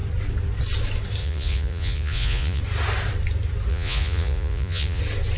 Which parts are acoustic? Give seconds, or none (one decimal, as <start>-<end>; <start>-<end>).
0.0-1.2; 2.6-3.7; 5.0-5.4